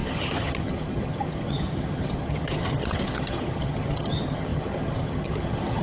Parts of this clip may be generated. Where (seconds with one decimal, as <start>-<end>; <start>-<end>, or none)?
0.0-5.8